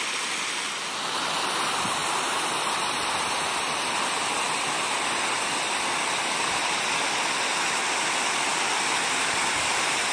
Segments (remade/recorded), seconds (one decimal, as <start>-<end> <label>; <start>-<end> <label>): 0.0-10.1 recorded